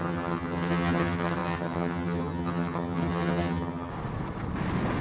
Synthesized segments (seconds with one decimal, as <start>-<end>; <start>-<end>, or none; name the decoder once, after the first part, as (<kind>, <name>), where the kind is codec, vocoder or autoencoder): 0.0-3.9 (vocoder, HiFi-GAN)